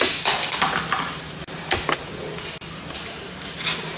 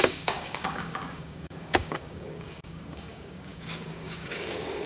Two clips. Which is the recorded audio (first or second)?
first